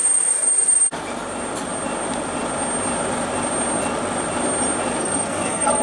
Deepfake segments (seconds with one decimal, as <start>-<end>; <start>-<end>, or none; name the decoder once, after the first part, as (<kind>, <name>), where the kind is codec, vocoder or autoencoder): 5.0-5.8 (codec, SNAC)